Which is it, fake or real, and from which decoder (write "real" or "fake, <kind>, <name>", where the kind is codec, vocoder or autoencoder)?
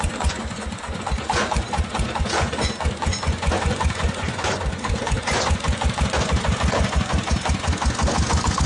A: fake, vocoder, Vocos